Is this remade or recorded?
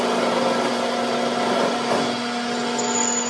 recorded